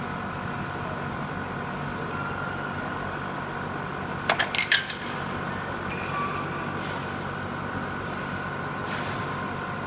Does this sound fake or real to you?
real